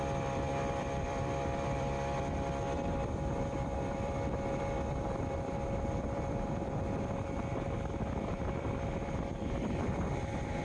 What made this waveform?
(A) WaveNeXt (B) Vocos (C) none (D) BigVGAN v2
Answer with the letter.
D